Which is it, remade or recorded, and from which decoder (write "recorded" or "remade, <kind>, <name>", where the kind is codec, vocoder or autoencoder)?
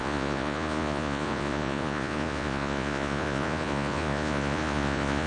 remade, vocoder, Vocos